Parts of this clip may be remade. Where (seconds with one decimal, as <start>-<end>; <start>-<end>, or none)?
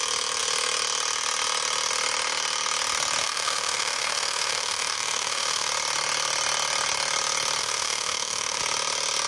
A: 3.2-5.7; 7.6-8.6